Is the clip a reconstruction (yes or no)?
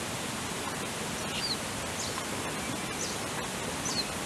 no